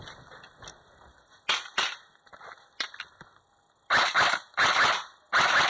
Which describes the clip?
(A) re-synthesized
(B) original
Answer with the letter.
B